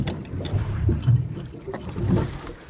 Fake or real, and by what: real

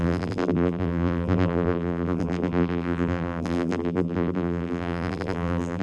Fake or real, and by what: fake, vocoder, BigVGAN v2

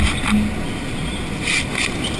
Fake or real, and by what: real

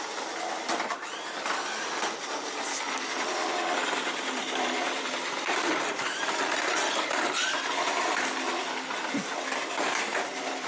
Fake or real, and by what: fake, vocoder, BigVGAN v2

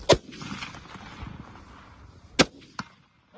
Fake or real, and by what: real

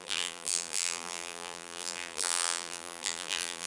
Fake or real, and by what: fake, vocoder, BigVGAN v2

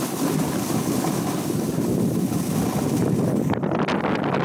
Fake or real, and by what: real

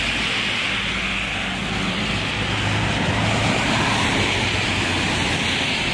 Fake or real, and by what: real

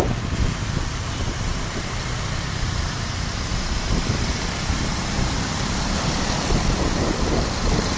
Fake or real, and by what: fake, vocoder, BigVGAN v2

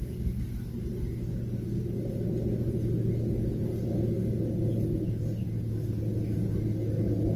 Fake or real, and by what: real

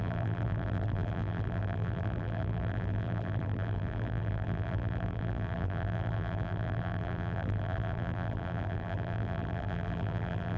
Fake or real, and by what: fake, vocoder, BigVGAN v2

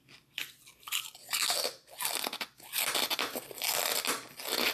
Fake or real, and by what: real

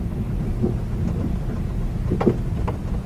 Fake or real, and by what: real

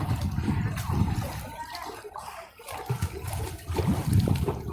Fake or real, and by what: fake, vocoder, BigVGAN v2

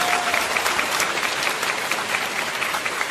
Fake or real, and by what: real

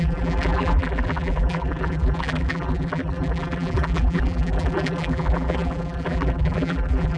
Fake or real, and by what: fake, vocoder, BigVGAN v2